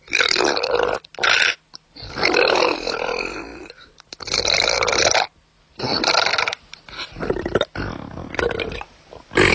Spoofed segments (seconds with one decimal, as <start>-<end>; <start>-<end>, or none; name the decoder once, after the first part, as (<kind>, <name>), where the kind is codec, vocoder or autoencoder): none

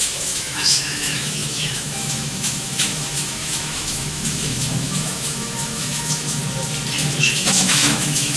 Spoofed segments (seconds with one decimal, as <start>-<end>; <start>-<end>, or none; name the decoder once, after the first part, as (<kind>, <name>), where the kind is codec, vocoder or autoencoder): 0.0-6.4 (autoencoder, DAC-VAE); 7.2-8.4

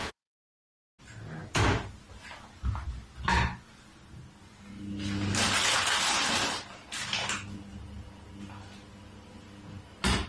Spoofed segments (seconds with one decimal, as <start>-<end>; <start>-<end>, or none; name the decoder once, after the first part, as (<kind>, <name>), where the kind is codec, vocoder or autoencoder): 0.0-1.0 (vocoder, Vocos)